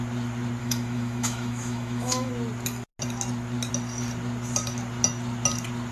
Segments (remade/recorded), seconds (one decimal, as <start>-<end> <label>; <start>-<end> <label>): 0.0-0.6 recorded; 0.6-2.3 remade; 2.3-5.9 recorded